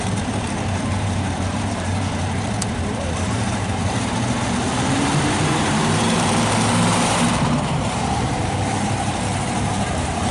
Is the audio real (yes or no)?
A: no